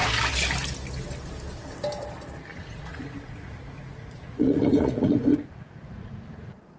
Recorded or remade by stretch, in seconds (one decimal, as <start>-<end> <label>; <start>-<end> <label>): 0.0-2.5 recorded; 2.5-6.8 remade